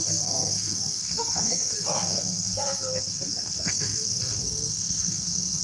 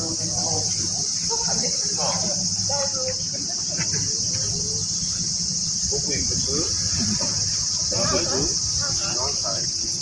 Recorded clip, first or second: second